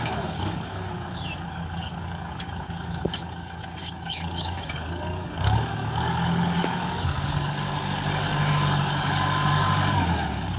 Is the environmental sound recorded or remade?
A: remade